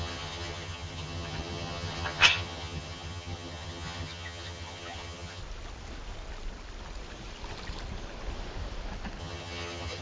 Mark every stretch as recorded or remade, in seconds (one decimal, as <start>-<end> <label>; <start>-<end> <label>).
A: 0.0-5.4 remade; 5.4-9.2 recorded; 9.2-10.0 remade